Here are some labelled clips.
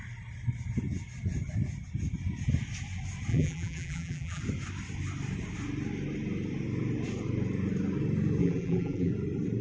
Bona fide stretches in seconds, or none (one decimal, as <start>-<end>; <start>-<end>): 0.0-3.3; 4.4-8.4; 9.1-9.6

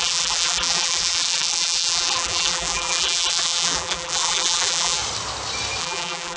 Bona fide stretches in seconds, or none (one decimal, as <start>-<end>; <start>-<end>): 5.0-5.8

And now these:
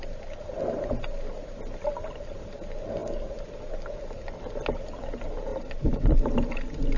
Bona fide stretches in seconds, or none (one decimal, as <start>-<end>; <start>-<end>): 0.0-5.5; 6.2-7.0

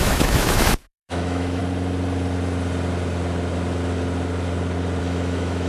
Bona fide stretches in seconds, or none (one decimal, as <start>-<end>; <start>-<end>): 1.6-5.0

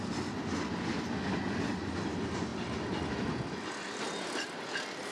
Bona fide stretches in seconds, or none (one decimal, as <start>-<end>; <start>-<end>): 0.0-5.1